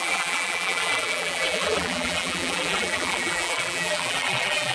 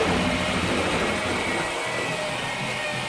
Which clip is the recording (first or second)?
second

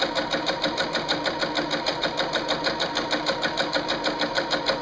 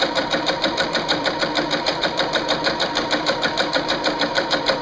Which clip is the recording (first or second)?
first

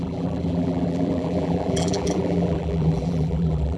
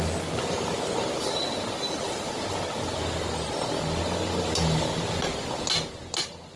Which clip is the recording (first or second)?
second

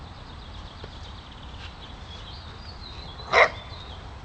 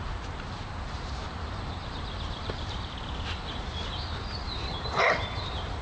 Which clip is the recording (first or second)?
first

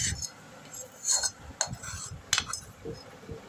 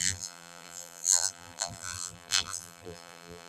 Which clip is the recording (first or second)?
first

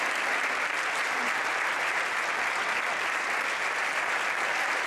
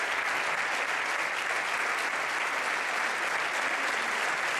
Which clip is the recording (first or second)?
second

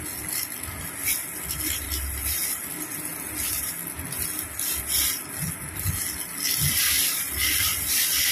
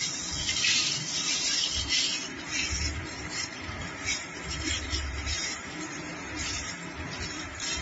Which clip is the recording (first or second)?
first